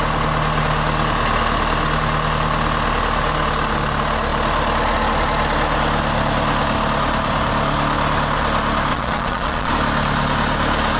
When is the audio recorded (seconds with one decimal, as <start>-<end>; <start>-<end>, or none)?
0.0-8.9; 9.7-11.0